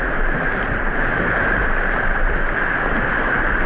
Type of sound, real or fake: real